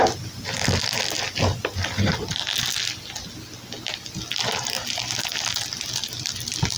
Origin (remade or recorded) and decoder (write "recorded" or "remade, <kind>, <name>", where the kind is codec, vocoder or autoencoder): recorded